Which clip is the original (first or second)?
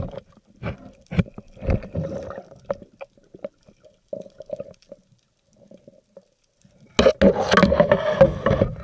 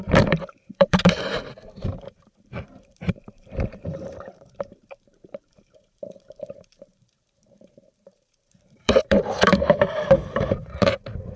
first